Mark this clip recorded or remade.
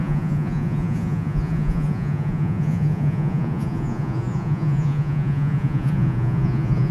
remade